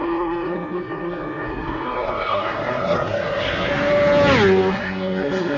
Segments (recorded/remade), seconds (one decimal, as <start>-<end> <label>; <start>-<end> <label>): 0.0-3.7 remade; 3.7-4.7 recorded; 4.7-5.6 remade